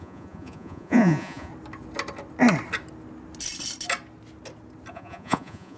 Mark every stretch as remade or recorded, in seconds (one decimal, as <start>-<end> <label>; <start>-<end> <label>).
0.0-1.5 remade; 1.5-4.9 recorded; 4.9-5.8 remade